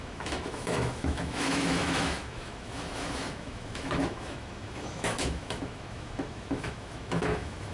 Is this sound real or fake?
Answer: fake